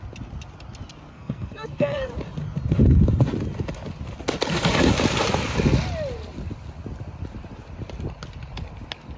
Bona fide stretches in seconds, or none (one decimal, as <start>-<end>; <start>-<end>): 0.0-1.1; 2.1-9.2

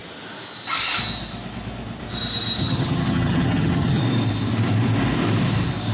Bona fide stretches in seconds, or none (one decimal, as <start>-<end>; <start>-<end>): 0.0-2.6; 4.0-5.9

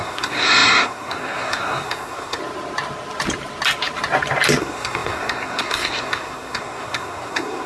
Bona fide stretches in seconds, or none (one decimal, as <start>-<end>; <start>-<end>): 2.4-4.6

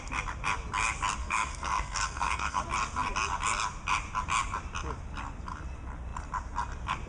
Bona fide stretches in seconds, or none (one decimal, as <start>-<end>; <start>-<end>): 0.0-1.2; 2.6-7.1

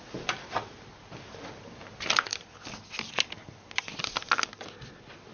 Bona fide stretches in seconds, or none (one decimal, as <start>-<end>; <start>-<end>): 0.0-5.3